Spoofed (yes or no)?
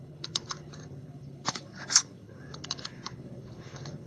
yes